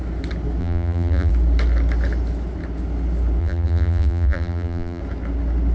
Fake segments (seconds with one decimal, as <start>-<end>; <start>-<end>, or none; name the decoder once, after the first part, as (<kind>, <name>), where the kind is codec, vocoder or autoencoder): 0.6-1.3 (vocoder, BigVGAN v2); 3.4-5.0